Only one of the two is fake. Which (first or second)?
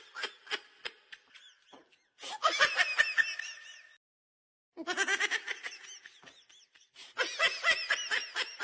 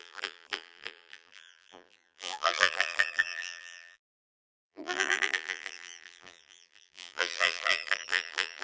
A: second